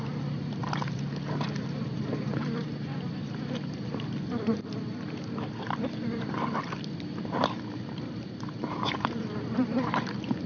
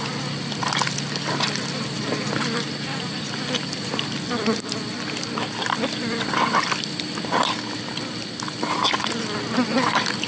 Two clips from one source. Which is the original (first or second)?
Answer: second